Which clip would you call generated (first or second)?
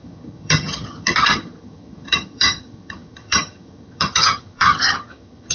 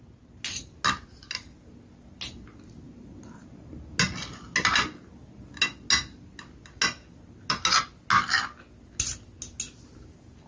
first